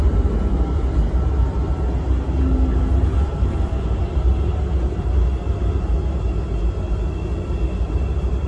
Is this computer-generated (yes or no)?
no